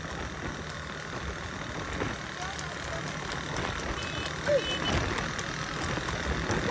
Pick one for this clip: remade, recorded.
recorded